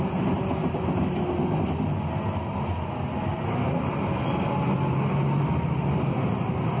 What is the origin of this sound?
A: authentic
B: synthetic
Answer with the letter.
A